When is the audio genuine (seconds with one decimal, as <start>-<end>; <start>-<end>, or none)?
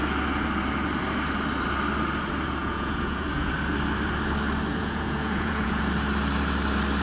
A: 0.0-2.6; 3.5-4.7; 5.9-7.0